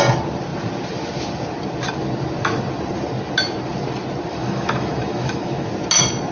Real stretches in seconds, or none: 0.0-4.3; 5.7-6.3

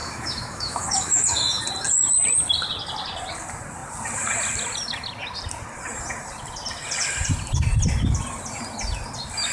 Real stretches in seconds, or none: 1.6-9.5